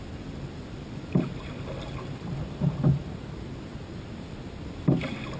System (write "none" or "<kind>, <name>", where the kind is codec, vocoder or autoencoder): none